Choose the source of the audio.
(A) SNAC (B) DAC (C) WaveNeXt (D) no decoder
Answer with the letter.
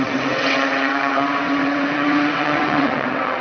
C